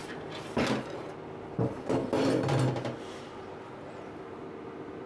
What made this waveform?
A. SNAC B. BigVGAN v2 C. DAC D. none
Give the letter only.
D